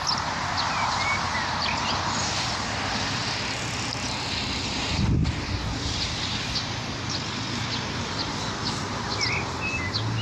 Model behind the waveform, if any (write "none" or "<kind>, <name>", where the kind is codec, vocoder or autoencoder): none